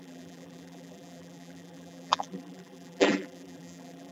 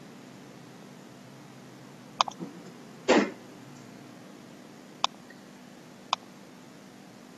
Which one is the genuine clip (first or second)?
second